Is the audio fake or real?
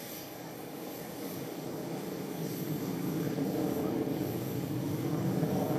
fake